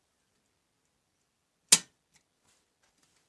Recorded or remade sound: recorded